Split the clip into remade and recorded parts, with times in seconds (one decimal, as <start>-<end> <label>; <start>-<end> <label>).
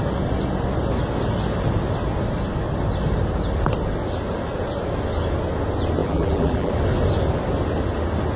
0.0-6.0 recorded; 6.0-6.7 remade; 6.7-8.4 recorded